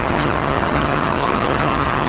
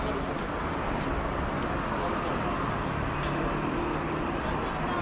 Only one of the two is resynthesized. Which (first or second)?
first